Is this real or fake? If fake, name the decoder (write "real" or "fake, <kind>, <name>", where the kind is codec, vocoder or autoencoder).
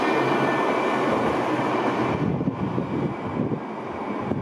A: real